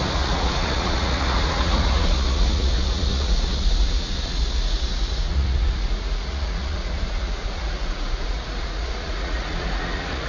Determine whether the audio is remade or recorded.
remade